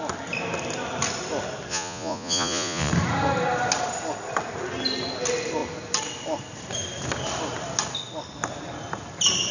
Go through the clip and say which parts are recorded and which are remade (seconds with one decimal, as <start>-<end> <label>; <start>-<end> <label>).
0.0-1.7 recorded; 1.7-2.9 remade; 2.9-9.5 recorded